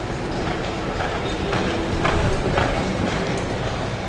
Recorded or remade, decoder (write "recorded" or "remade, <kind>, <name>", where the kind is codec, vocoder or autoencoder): remade, vocoder, BigVGAN v2